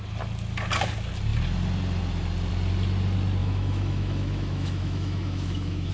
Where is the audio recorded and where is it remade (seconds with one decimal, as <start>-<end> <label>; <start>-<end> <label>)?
0.0-3.4 recorded; 3.4-5.9 remade